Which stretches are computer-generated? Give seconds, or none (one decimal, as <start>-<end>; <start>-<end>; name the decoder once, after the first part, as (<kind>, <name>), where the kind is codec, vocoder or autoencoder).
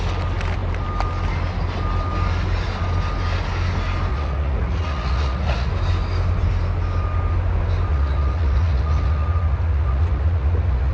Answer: 4.1-5.7 (vocoder, Vocos); 7.9-10.9